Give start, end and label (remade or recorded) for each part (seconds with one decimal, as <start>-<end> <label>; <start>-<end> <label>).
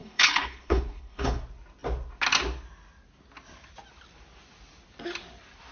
0.0-1.4 remade; 1.4-5.7 recorded